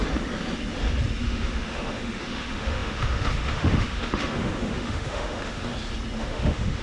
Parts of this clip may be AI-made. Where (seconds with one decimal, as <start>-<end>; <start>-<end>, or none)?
1.2-5.7; 6.2-6.8